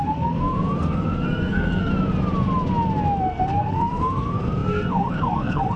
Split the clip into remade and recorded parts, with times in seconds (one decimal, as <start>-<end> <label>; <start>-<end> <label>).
0.0-1.9 remade; 1.9-3.2 recorded; 3.2-5.8 remade